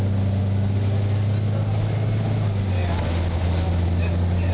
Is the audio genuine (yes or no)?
yes